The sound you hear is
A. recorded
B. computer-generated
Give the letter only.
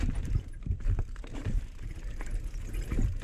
B